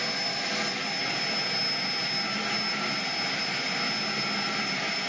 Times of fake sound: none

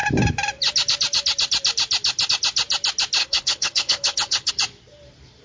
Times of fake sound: 3.2-4.5 (codec, HILCodec)

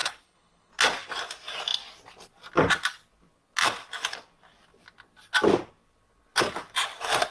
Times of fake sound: 0.0-0.7 (codec, HILCodec)

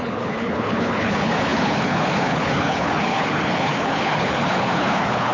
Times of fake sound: 0.0-5.3 (codec, HILCodec)

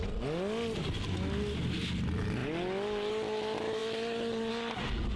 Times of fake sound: none

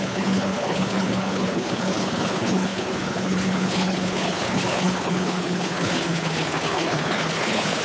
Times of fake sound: 0.0-7.8 (codec, HILCodec)